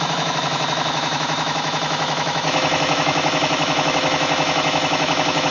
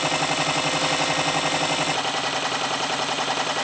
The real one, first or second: second